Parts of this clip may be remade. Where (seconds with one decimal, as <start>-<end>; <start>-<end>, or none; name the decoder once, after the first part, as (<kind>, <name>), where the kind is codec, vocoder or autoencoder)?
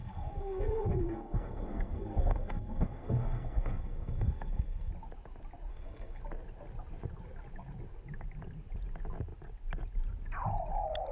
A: 0.0-4.9 (codec, SNAC); 5.7-6.2